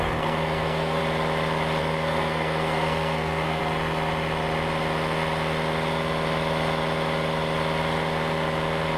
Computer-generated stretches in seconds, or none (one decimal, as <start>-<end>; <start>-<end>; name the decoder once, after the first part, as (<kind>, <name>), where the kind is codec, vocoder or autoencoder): 0.0-1.0 (codec, SNAC); 1.8-3.6